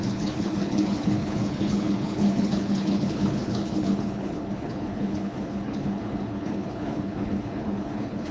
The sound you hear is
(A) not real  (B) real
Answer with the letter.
A